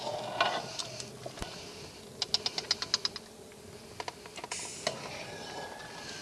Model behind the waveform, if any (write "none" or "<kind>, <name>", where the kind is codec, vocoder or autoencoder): none